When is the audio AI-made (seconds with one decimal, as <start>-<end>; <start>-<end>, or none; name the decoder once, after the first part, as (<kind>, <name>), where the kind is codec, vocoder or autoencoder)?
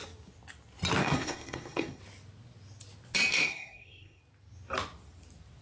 1.0-2.0 (codec, SNAC); 3.3-4.2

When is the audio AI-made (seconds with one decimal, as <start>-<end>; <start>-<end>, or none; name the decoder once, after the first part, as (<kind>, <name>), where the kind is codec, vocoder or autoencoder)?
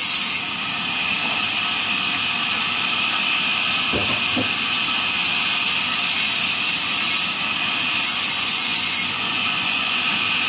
8.1-10.0 (vocoder, Vocos)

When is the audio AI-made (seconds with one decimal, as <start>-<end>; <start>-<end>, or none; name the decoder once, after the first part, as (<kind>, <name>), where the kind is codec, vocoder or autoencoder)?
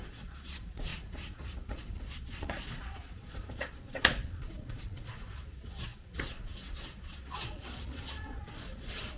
0.0-9.2 (vocoder, Vocos)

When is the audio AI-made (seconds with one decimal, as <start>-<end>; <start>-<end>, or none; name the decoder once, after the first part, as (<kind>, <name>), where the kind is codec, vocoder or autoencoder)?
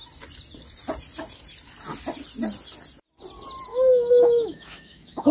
3.7-5.3 (autoencoder, DAC-VAE)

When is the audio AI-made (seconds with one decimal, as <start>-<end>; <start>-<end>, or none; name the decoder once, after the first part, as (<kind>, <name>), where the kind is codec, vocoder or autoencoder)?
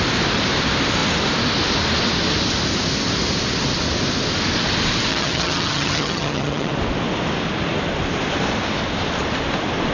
5.1-6.7 (vocoder, HiFi-GAN)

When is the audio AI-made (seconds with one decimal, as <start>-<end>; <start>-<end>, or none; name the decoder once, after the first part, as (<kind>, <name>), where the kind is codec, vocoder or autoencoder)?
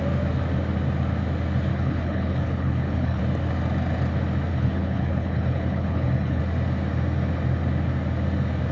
1.7-3.2 (codec, HILCodec); 4.5-6.4